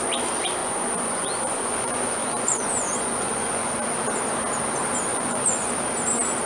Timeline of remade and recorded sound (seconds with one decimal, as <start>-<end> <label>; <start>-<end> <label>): 0.0-0.6 recorded; 0.6-3.7 remade; 3.7-5.1 recorded; 5.1-5.7 remade; 5.7-6.5 recorded